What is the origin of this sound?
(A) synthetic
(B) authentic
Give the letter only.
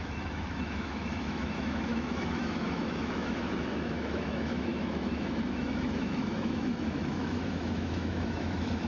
A